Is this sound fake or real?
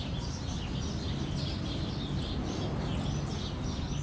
real